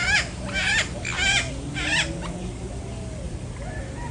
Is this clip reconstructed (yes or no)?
no